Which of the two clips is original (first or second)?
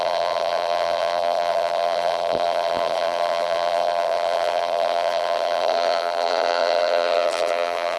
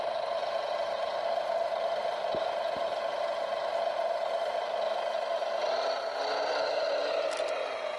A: second